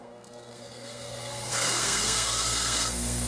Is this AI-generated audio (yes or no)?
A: yes